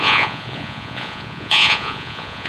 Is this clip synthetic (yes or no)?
yes